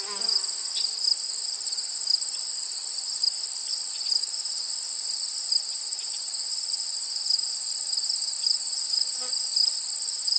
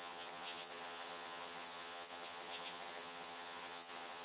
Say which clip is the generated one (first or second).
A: second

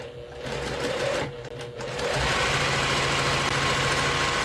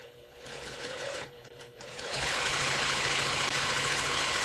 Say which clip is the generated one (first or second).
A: second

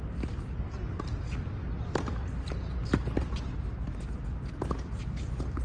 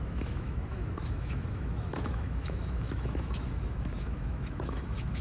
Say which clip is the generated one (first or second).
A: second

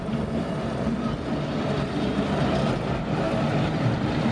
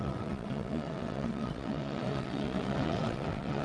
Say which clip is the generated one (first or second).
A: second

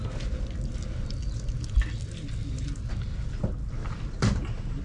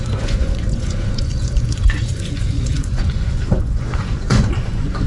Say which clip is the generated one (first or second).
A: second